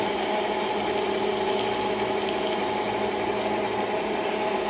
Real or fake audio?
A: real